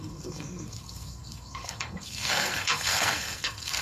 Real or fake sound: fake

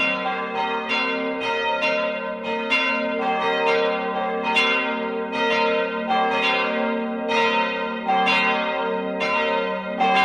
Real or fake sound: real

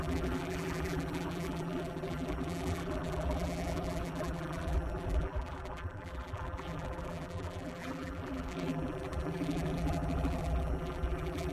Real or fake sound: fake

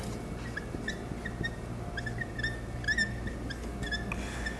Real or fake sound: real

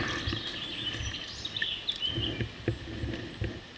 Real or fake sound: real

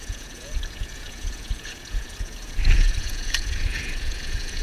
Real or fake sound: fake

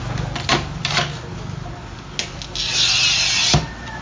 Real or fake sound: real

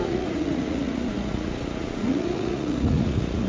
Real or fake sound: fake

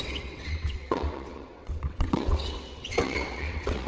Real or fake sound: fake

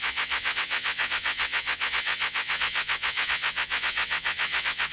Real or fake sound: fake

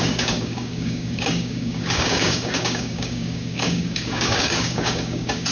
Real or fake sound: fake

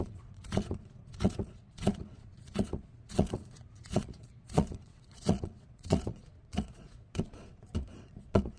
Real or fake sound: fake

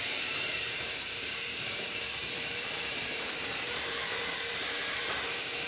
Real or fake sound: fake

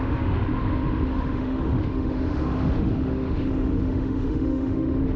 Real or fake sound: fake